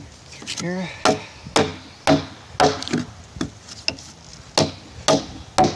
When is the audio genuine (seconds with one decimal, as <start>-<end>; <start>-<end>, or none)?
0.0-5.8